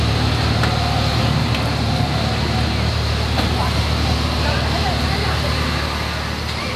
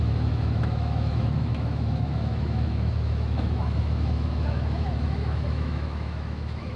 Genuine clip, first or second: first